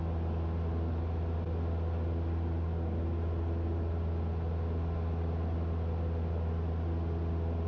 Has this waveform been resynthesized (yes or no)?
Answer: no